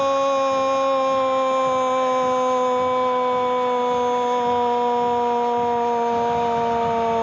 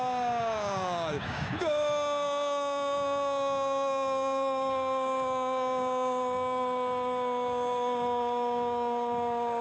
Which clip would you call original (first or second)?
first